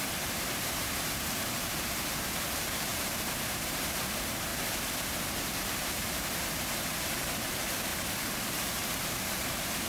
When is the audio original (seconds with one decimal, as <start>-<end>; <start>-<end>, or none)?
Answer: 2.9-3.5; 4.5-5.5; 7.9-8.5